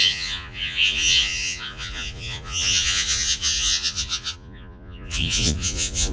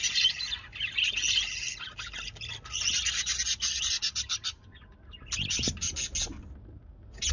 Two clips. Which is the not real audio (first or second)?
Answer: first